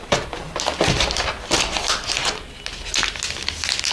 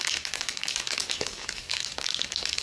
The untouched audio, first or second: first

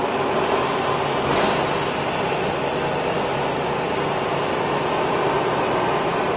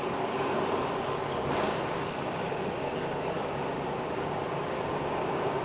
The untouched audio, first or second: first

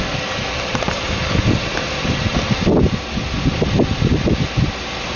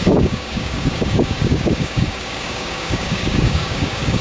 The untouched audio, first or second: first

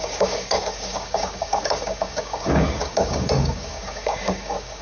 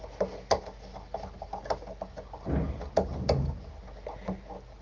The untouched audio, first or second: second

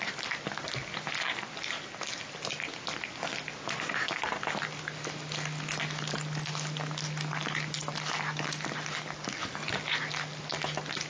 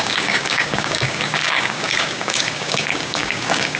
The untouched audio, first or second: first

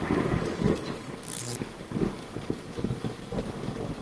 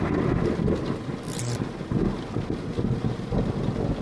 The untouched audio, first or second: second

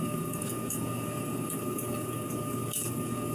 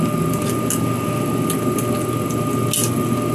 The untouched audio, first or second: second